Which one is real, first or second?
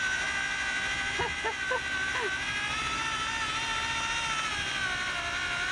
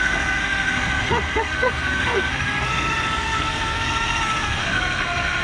first